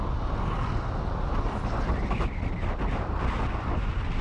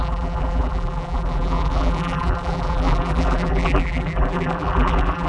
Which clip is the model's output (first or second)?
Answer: second